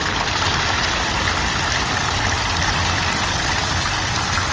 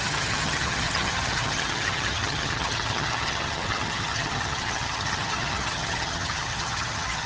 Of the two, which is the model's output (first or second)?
second